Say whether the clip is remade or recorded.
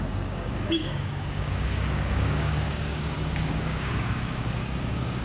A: remade